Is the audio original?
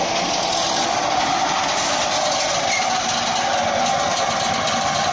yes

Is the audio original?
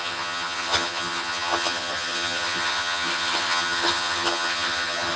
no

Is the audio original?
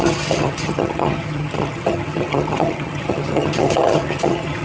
no